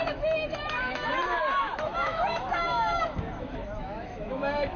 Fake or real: fake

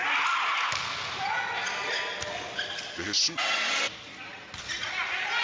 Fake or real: real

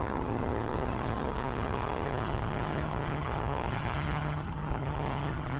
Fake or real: fake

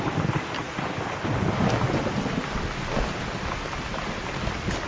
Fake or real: real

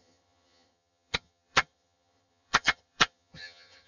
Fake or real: fake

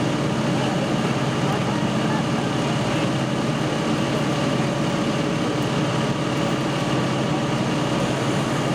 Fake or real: real